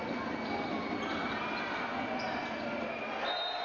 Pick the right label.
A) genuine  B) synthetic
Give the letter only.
A